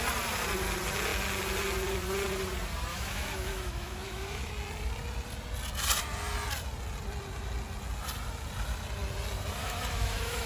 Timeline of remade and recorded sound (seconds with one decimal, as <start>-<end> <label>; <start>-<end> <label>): 0.0-2.9 recorded; 2.9-4.5 remade; 4.5-9.6 recorded; 9.6-10.5 remade